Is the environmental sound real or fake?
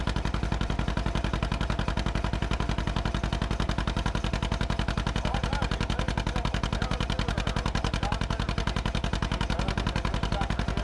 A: real